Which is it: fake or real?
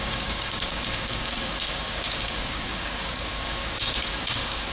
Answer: fake